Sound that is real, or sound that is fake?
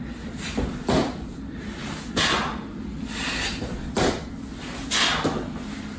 real